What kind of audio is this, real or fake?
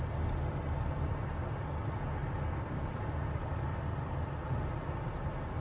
real